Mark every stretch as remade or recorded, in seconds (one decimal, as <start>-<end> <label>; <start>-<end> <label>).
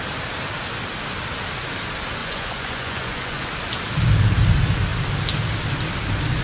0.0-2.2 recorded; 2.2-3.5 remade; 3.5-6.4 recorded